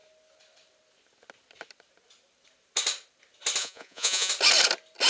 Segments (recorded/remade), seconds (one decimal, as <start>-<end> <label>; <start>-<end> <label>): 0.0-3.6 recorded; 3.6-4.3 remade; 4.3-5.1 recorded